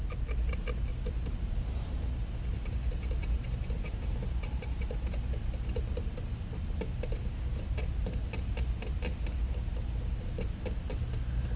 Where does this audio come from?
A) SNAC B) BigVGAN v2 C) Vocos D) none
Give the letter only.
D